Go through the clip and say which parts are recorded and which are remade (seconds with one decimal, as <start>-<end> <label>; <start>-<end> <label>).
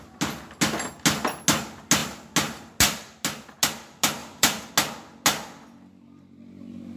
0.0-4.2 recorded; 4.2-4.7 remade; 4.7-7.0 recorded